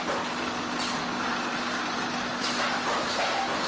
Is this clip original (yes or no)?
yes